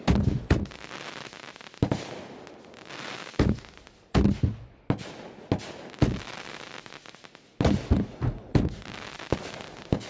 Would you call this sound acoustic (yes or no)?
yes